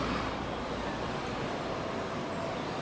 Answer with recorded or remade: recorded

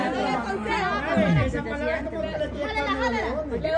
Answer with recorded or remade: recorded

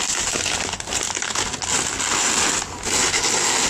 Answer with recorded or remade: recorded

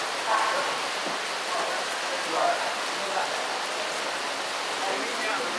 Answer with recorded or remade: recorded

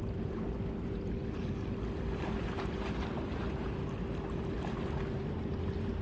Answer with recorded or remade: recorded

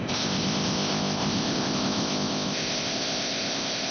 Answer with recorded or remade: remade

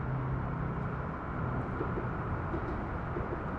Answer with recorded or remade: recorded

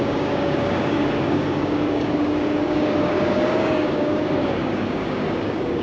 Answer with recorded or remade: remade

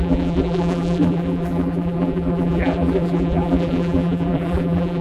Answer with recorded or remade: remade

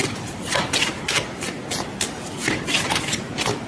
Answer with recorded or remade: recorded